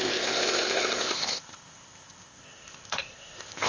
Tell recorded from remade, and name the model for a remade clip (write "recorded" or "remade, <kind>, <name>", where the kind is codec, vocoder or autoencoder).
remade, codec, ZipCodec